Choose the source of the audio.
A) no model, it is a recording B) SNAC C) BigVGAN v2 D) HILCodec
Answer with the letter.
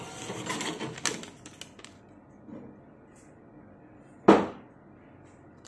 A